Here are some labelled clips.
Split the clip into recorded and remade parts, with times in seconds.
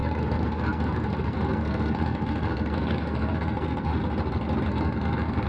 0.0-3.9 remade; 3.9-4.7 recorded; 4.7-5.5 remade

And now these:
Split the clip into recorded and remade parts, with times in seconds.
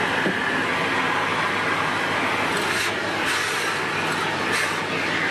0.0-1.3 recorded; 1.3-4.5 remade; 4.5-5.3 recorded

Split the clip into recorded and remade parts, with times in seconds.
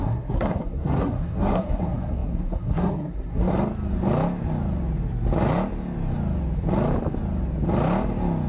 0.0-3.5 remade; 3.5-8.5 recorded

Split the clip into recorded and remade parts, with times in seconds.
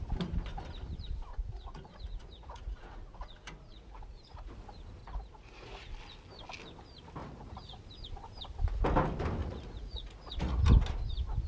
0.0-1.3 recorded; 1.3-4.5 remade; 4.5-5.0 recorded; 5.0-5.9 remade; 5.9-7.2 recorded; 7.2-7.8 remade; 7.8-9.4 recorded; 9.4-10.6 remade; 10.6-11.5 recorded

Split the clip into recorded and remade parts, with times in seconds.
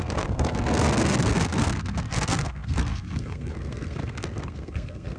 0.0-5.2 remade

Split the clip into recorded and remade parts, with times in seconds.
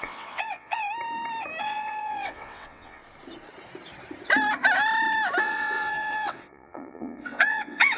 0.0-0.8 remade; 0.8-1.6 recorded; 1.6-3.0 remade; 3.0-5.4 recorded; 5.4-8.0 remade